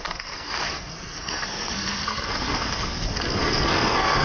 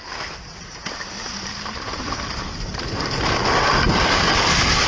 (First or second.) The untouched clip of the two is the second